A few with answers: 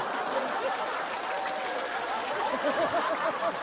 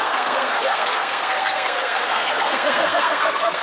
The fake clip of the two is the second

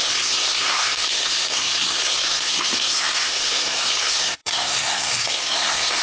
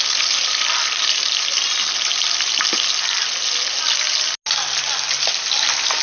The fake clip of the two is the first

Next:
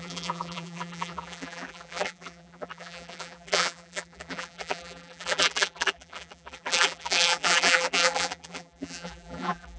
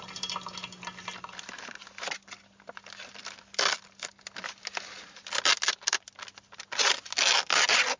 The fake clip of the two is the first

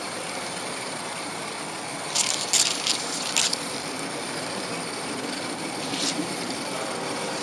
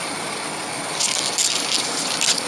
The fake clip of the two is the first